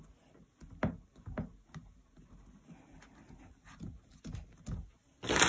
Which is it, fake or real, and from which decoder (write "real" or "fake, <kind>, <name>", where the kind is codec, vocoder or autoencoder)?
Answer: real